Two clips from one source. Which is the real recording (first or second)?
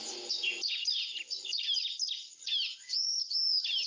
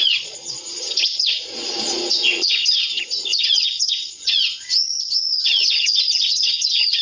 first